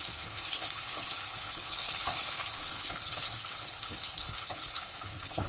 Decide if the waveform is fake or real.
fake